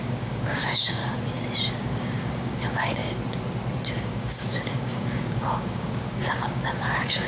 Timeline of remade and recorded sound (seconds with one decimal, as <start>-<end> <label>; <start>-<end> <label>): 0.0-1.0 remade; 1.0-1.7 recorded; 1.7-3.0 remade; 3.0-4.0 recorded; 4.0-7.3 remade